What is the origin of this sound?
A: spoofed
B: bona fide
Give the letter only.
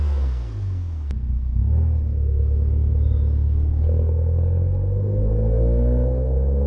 A